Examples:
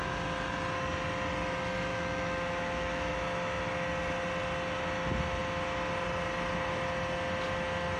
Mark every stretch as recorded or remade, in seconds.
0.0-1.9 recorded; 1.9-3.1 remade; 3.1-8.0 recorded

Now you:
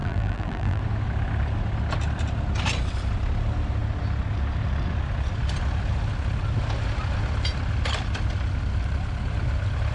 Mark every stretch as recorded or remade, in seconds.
0.0-0.8 remade; 0.8-9.9 recorded

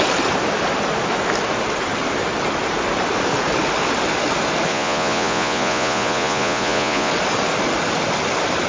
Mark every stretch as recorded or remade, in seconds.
0.0-4.7 recorded; 4.7-7.1 remade; 7.1-8.7 recorded